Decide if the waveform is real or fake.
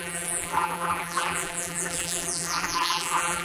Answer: fake